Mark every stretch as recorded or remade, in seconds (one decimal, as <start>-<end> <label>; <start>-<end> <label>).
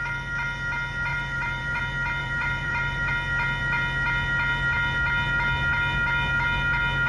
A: 0.0-1.1 recorded; 1.1-1.8 remade; 1.8-2.2 recorded; 2.2-3.1 remade; 3.1-7.1 recorded